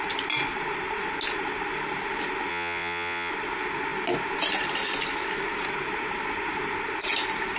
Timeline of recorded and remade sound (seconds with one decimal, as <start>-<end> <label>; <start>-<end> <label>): 0.0-2.5 recorded; 2.5-3.3 remade; 3.3-7.6 recorded

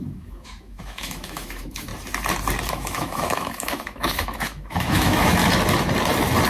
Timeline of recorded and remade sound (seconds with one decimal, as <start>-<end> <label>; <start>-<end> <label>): 0.0-1.9 remade; 1.9-2.7 recorded; 2.7-5.4 remade; 5.4-6.5 recorded

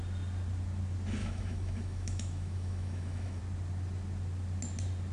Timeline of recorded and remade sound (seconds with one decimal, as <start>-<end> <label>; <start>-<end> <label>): 0.0-1.2 recorded; 1.2-3.4 remade; 3.4-5.1 recorded

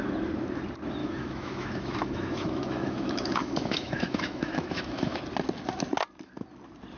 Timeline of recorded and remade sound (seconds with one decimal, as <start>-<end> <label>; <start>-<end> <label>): 0.0-1.0 recorded; 1.0-5.2 remade; 5.2-7.0 recorded

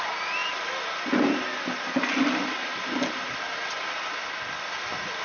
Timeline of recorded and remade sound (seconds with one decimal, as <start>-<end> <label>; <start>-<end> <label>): 0.0-5.2 recorded

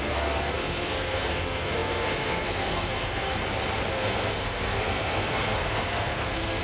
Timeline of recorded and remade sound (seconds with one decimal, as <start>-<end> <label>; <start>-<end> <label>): 0.0-3.4 remade; 3.4-3.9 recorded; 3.9-6.6 remade

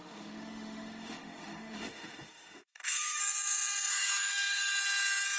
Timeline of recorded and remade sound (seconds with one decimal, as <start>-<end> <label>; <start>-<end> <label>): 0.0-3.2 remade; 3.2-3.9 recorded; 3.9-4.6 remade; 4.6-5.4 recorded